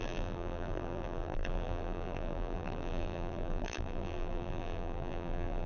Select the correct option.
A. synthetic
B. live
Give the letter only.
A